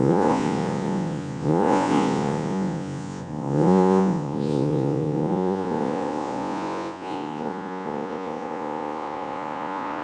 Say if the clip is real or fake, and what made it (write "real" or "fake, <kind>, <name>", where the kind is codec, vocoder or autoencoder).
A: fake, vocoder, Vocos